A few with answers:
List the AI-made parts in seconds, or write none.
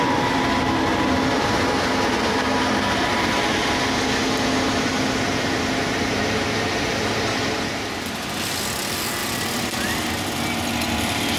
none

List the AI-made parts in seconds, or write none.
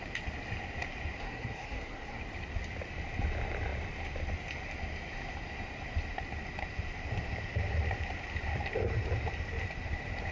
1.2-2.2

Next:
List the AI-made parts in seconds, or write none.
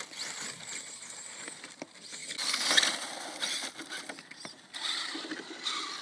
none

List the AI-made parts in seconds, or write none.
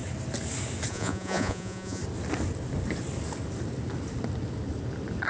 0.9-2.0